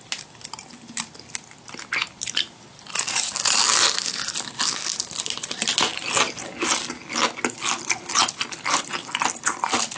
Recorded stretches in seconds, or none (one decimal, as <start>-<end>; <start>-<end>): 0.0-10.0